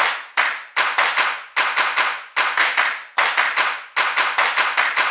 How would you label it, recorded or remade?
recorded